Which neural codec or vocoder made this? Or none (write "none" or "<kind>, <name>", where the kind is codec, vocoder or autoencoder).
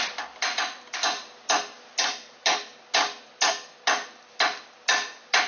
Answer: none